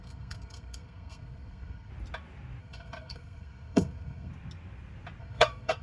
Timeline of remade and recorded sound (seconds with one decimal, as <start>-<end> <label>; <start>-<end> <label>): 0.0-1.9 remade; 1.9-2.6 recorded; 2.6-4.3 remade; 4.3-5.2 recorded; 5.2-5.8 remade